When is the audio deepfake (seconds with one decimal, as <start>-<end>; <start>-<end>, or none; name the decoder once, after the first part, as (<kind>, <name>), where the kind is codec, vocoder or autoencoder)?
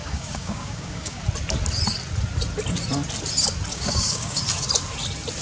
0.0-1.2 (codec, DAC); 3.7-4.4